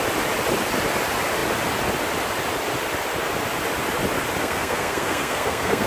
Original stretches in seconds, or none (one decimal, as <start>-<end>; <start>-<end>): 0.0-4.4